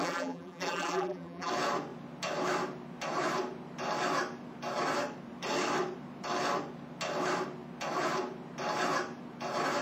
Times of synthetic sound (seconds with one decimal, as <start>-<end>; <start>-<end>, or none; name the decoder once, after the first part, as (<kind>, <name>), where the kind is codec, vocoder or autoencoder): 0.0-1.5 (vocoder, BigVGAN v2)